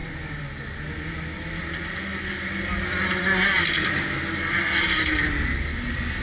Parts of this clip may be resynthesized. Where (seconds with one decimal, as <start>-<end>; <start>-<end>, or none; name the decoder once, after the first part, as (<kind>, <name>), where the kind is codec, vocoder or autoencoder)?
none